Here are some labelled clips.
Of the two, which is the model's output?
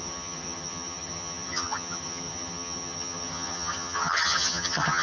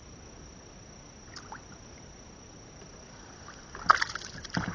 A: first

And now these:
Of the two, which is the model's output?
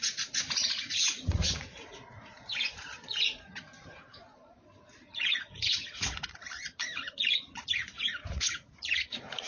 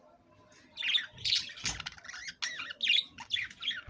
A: first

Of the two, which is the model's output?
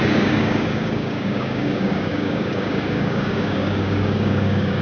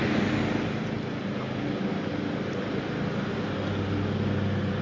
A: first